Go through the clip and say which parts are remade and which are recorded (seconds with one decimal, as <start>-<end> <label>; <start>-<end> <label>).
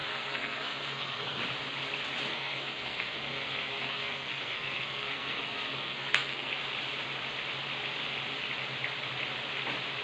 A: 0.0-1.4 remade; 1.4-2.3 recorded; 2.3-6.5 remade; 6.5-10.0 recorded